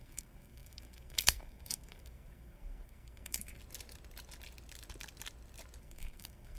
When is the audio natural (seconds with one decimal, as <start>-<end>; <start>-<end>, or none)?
3.6-5.8